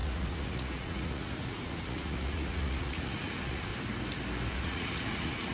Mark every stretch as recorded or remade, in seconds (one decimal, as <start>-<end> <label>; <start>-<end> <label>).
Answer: 0.0-3.7 remade; 3.7-4.5 recorded; 4.5-5.5 remade